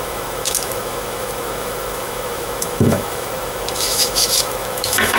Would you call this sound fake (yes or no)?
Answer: yes